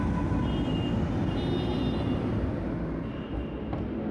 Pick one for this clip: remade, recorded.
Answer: recorded